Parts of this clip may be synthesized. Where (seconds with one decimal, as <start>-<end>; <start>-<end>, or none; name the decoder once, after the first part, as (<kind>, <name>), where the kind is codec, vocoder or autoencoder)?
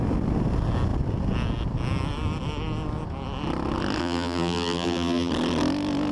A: 4.0-5.3 (vocoder, BigVGAN v2)